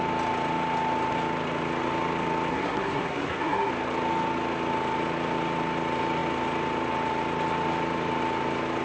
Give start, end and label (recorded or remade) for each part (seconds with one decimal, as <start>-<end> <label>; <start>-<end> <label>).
0.0-2.5 recorded; 2.5-3.7 remade; 3.7-8.8 recorded